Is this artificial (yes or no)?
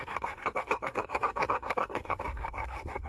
yes